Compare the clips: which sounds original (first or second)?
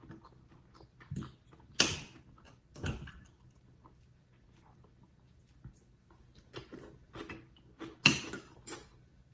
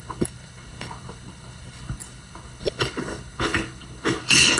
first